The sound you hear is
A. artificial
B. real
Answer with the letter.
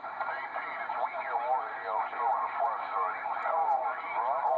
B